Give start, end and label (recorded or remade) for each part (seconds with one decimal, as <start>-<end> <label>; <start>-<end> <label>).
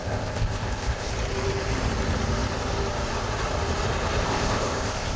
0.0-1.1 remade; 1.1-4.2 recorded; 4.2-5.2 remade